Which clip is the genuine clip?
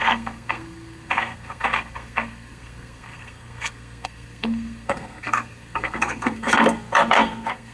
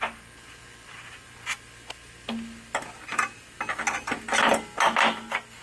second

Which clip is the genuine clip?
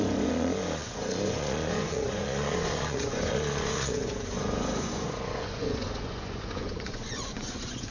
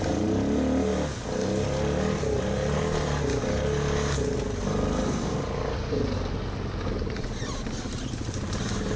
second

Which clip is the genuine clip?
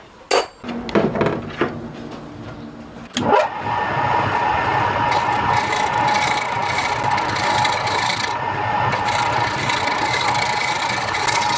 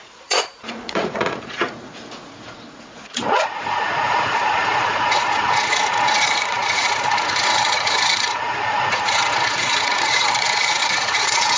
first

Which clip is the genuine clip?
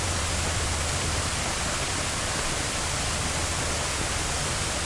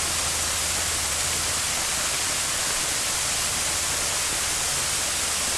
second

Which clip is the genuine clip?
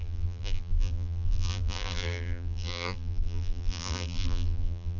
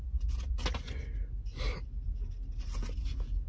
second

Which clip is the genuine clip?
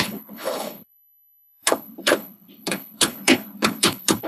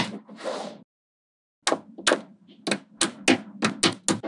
second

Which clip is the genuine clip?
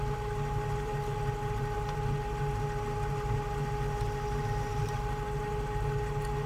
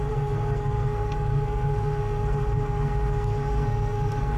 first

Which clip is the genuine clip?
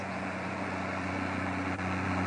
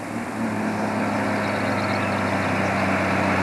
second